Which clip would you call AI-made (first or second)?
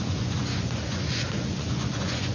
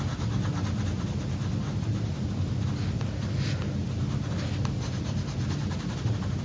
first